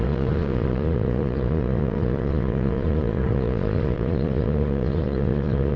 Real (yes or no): no